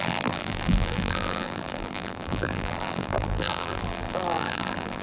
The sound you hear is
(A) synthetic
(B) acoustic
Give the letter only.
A